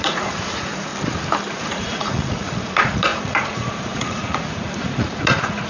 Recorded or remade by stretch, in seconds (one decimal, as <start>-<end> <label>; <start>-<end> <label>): 0.0-0.9 remade; 0.9-1.5 recorded; 1.5-5.7 remade